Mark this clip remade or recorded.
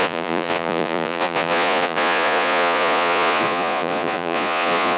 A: remade